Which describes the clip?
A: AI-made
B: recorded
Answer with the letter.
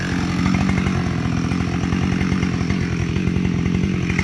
B